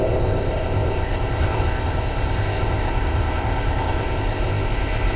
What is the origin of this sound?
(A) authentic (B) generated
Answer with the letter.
B